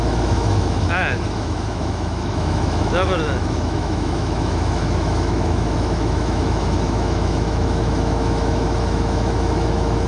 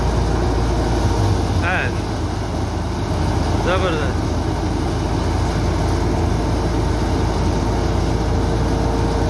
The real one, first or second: second